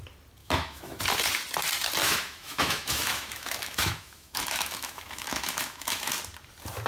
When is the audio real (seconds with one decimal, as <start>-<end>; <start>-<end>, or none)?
0.0-0.4; 1.0-2.0; 6.1-6.9